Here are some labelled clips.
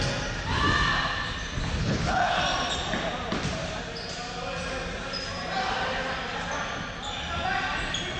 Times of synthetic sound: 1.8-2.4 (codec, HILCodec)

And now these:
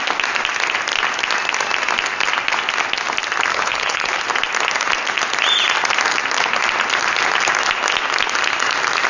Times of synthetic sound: 3.5-4.2 (codec, HILCodec)

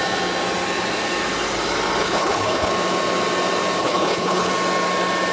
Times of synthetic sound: 2.0-2.7 (codec, HILCodec); 3.8-4.5

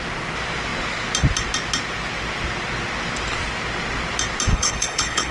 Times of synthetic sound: 4.5-5.3 (codec, HILCodec)

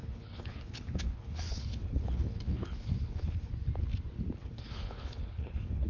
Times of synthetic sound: 0.0-3.5 (codec, HILCodec); 4.4-5.9

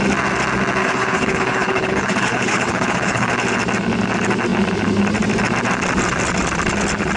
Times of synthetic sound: 0.8-3.3 (codec, HILCodec)

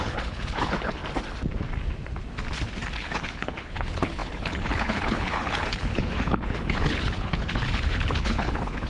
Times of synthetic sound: 0.0-1.0 (codec, HILCodec); 2.9-8.9

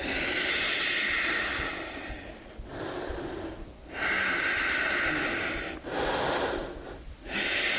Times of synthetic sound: none